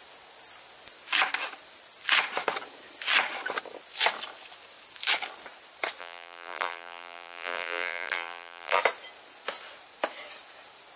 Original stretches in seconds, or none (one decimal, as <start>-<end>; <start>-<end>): 0.0-6.0; 8.8-11.0